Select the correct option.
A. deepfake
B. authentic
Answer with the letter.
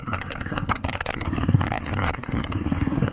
A